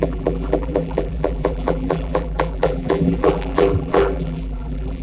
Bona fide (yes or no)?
no